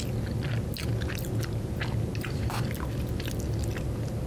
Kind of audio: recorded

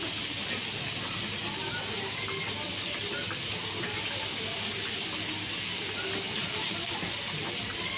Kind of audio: recorded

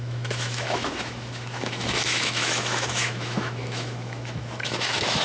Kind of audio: remade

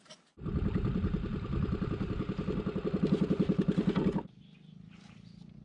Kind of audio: recorded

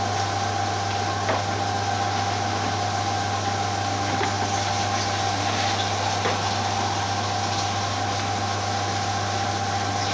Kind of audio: recorded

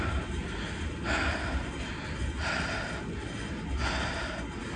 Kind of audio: recorded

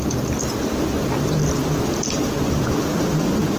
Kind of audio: recorded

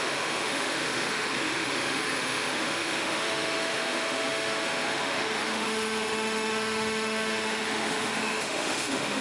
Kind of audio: remade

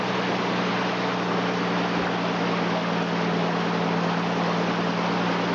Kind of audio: recorded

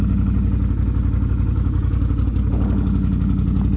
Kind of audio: recorded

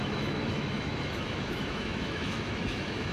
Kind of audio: remade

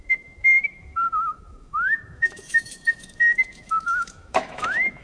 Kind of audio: remade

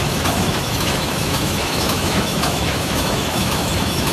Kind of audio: remade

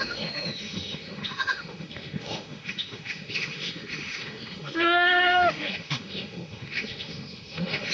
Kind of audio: remade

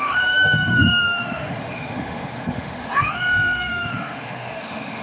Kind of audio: remade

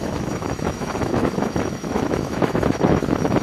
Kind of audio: remade